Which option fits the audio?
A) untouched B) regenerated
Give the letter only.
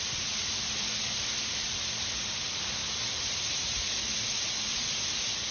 A